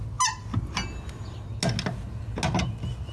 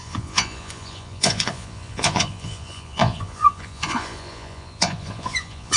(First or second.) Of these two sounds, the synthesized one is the second